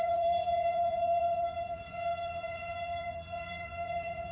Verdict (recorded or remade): remade